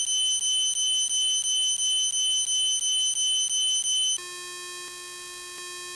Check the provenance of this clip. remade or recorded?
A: recorded